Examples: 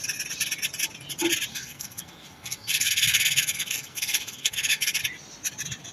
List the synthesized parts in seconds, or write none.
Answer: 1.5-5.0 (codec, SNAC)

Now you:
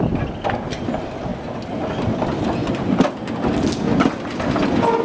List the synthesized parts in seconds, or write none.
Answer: none

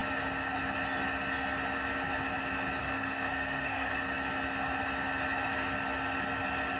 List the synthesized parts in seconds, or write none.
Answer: 2.8-3.9 (codec, SNAC)

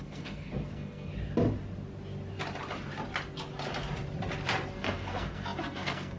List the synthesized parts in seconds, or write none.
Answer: 0.0-1.1 (codec, SNAC); 4.7-6.2

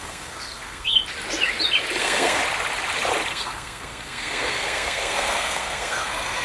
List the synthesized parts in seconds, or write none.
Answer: 0.0-1.0 (codec, SNAC); 2.0-2.4; 3.3-6.4

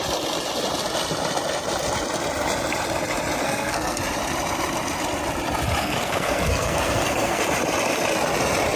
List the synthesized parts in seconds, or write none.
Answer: 3.4-4.0 (codec, SNAC); 5.8-7.4

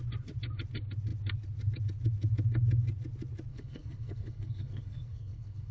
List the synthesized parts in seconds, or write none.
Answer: 3.5-5.7 (codec, SNAC)